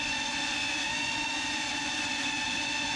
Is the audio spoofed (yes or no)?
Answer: yes